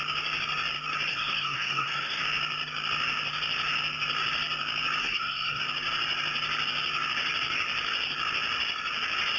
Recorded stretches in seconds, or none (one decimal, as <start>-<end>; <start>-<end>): 0.0-1.1; 2.2-5.0; 5.6-9.4